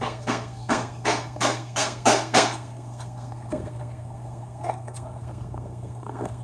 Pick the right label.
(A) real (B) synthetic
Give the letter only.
B